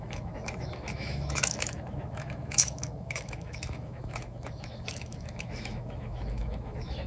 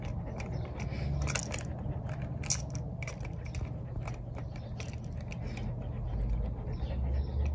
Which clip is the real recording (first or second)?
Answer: second